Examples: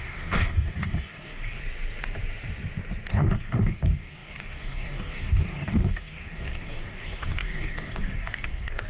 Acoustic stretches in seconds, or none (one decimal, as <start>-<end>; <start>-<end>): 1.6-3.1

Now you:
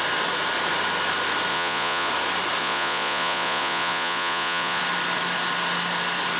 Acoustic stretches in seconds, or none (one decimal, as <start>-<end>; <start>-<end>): 0.0-1.5; 2.1-2.6; 4.8-6.4

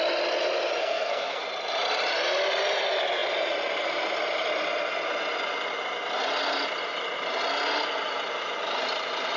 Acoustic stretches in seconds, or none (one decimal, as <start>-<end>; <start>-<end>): 0.0-0.8; 1.4-9.4